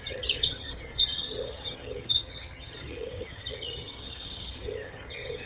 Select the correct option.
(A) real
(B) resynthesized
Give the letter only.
B